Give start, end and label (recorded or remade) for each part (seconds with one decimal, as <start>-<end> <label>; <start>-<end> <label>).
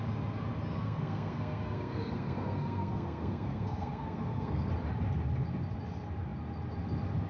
0.0-0.8 recorded; 0.8-4.7 remade; 4.7-7.3 recorded